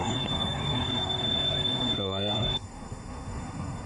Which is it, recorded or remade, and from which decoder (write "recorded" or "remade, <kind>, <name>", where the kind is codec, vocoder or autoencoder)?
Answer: remade, codec, SNAC